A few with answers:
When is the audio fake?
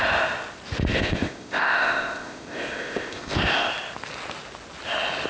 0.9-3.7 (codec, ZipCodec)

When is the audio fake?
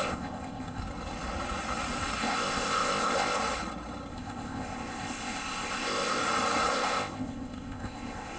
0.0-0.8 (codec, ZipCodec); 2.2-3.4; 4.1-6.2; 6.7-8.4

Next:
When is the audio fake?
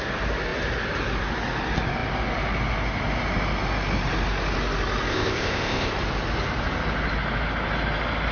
5.1-5.9 (codec, ZipCodec)